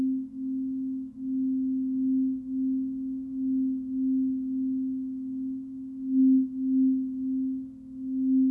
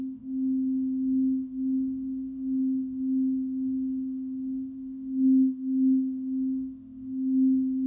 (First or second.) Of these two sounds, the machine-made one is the second